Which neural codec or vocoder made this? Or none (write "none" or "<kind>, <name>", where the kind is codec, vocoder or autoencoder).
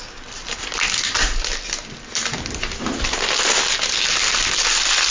none